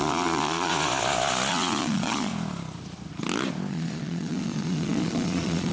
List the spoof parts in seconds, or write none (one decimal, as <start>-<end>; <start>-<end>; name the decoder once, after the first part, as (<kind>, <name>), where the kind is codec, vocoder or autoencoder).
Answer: 0.0-0.7 (vocoder, Vocos); 1.5-2.3; 3.7-5.7